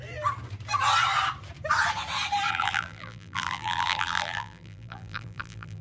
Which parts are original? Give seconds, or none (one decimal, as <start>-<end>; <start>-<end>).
0.0-2.5